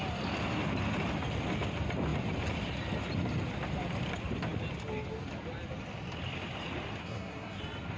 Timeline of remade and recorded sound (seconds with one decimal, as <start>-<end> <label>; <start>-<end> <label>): 0.0-7.0 recorded; 7.0-7.6 remade; 7.6-8.0 recorded